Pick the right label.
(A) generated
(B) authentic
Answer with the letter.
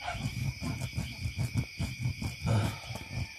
A